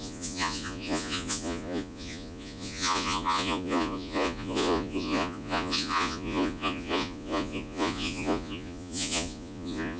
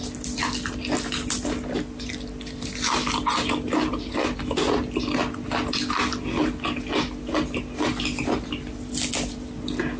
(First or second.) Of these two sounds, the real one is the second